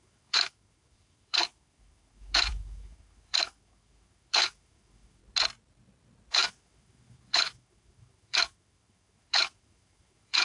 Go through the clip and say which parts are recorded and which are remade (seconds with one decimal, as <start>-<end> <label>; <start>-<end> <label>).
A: 0.0-5.2 remade; 5.2-6.3 recorded; 6.3-10.4 remade